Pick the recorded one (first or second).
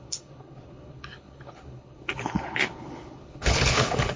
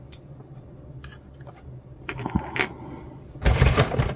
second